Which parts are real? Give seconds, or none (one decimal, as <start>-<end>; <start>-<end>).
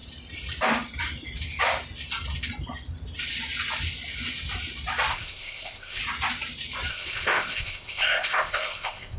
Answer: 0.0-5.1; 6.0-6.9